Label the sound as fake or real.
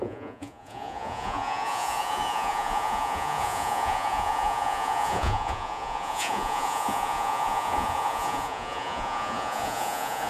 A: fake